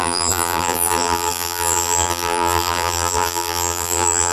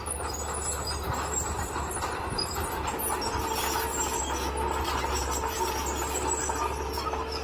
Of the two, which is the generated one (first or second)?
first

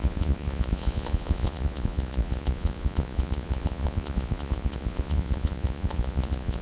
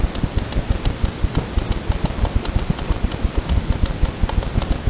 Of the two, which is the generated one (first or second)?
first